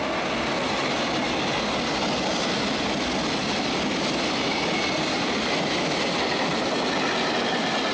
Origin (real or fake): real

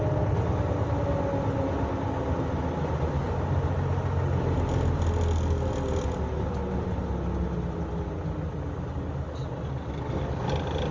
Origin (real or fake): real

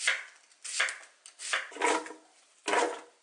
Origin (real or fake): real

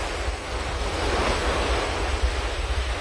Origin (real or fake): real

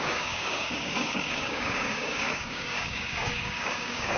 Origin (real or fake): fake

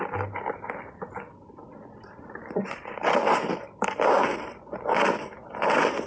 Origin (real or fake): real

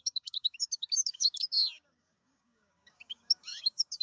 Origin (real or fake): fake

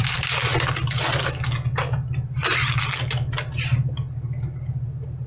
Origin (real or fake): real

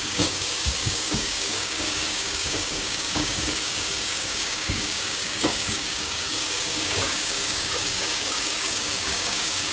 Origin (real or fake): fake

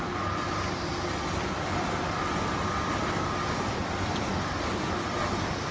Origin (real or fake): real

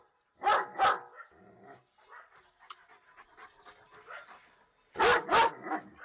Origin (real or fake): real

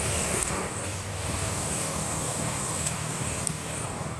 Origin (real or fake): fake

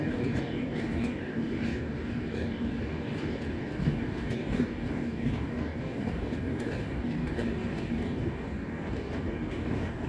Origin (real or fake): fake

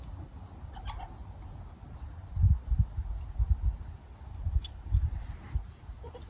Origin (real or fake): real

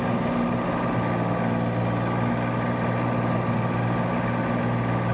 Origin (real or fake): real